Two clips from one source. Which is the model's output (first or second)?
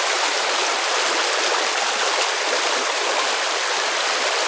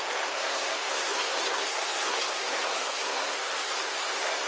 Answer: second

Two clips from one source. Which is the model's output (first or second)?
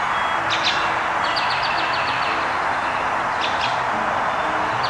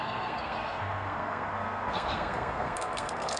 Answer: second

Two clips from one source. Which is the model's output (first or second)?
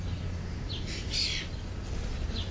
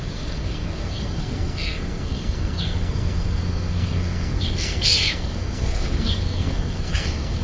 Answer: second